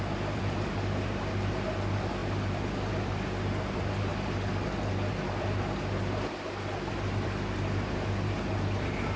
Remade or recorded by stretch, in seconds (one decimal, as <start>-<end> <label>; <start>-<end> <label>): 0.0-2.2 remade; 2.2-2.9 recorded; 2.9-4.1 remade; 4.1-5.1 recorded; 5.1-9.2 remade